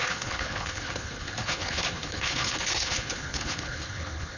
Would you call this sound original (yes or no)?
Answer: no